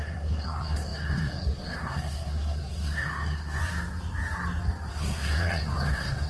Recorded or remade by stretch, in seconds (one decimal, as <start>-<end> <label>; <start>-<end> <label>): 0.0-3.6 remade; 3.6-4.9 recorded; 4.9-6.3 remade